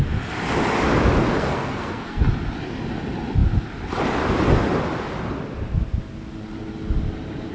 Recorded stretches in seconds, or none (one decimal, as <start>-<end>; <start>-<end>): 0.0-1.3; 2.2-7.5